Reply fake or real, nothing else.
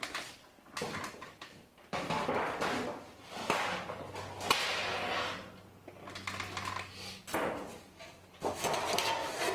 real